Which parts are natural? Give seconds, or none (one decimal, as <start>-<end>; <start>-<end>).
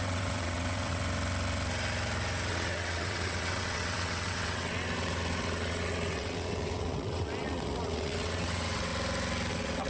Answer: 1.0-2.5; 8.9-9.5